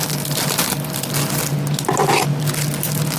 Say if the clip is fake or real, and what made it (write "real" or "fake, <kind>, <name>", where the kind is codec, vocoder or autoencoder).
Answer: real